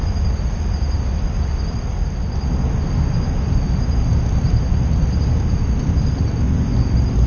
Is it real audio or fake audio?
real